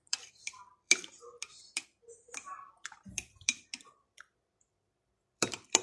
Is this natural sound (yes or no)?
no